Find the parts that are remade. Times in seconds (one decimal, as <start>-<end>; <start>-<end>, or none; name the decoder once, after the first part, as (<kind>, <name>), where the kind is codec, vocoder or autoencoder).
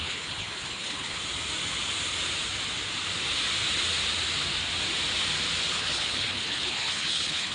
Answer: 0.0-1.2 (codec, HILCodec); 5.7-7.5